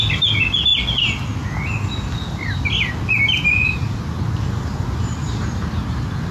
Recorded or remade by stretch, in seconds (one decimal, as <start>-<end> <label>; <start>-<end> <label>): 0.0-6.3 recorded